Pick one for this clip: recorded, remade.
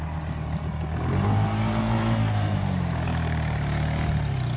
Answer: recorded